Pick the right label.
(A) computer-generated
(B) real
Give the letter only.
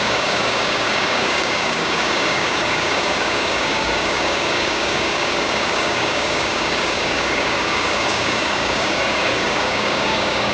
A